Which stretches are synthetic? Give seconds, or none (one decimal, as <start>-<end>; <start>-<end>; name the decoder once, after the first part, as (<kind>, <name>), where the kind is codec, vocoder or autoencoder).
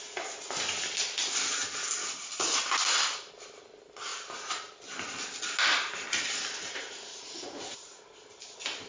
6.6-8.0 (vocoder, Vocos)